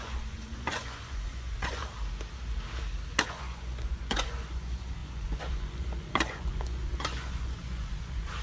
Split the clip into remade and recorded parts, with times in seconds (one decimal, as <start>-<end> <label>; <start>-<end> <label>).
0.0-1.8 remade; 1.8-3.3 recorded; 3.3-8.4 remade